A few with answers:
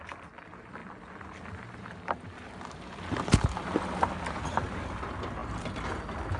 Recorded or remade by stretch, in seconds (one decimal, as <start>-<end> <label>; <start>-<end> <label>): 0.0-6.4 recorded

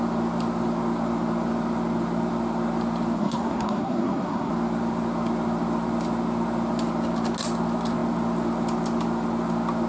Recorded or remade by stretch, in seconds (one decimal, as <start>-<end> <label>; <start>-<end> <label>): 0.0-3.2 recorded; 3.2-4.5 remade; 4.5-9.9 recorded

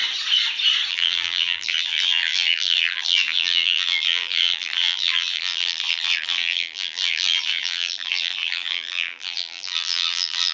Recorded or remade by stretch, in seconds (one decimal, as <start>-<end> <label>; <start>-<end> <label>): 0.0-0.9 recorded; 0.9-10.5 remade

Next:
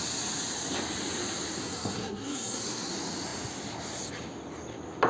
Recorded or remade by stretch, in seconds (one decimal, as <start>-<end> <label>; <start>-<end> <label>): 0.0-1.6 recorded; 1.6-2.9 remade; 2.9-5.1 recorded